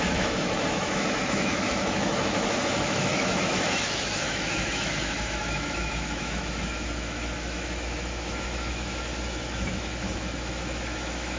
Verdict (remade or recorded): remade